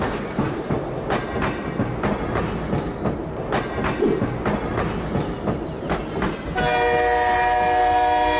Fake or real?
real